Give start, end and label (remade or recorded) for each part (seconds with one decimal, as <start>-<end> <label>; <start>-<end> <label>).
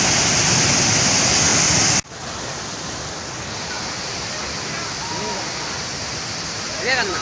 0.0-5.9 recorded; 5.9-7.2 remade